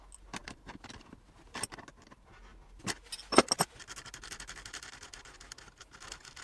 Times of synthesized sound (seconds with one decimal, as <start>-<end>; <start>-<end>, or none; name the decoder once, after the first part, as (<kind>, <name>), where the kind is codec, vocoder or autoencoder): 0.4-0.9 (vocoder, BigVGAN v2)